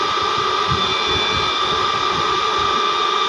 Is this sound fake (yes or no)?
no